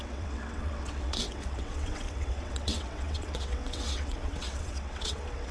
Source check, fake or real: fake